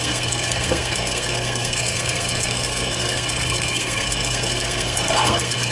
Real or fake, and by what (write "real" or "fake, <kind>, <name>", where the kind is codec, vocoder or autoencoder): fake, codec, SNAC